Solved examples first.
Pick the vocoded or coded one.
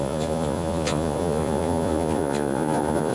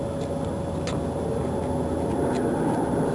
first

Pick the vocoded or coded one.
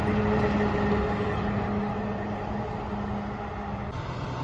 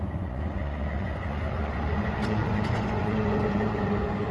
second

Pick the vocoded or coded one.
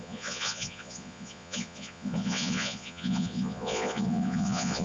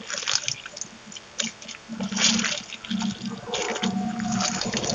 first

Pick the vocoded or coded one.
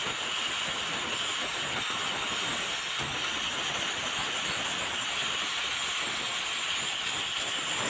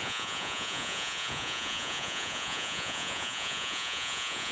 second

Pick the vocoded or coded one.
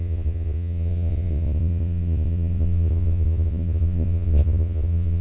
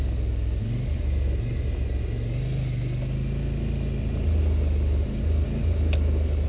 first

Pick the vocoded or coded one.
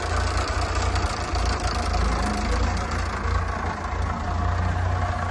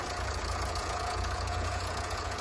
second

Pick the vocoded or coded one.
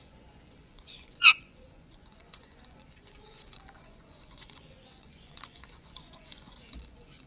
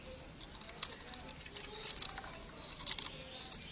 first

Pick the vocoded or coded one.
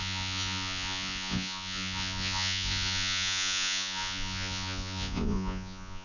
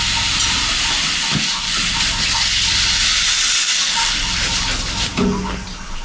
first